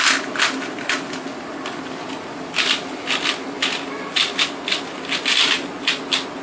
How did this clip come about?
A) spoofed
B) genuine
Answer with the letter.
B